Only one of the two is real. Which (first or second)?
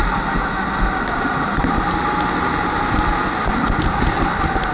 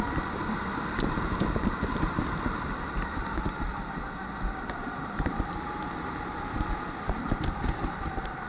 first